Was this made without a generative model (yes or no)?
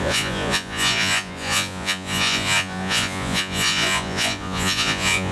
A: no